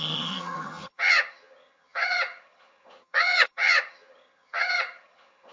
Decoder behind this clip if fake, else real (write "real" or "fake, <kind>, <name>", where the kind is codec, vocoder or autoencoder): fake, vocoder, HiFi-GAN